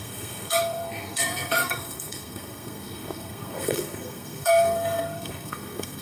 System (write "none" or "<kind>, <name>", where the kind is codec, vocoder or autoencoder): codec, SNAC